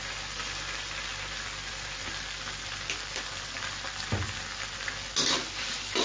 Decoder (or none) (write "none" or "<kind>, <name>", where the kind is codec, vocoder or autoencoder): none